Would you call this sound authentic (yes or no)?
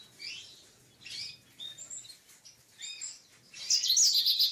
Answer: yes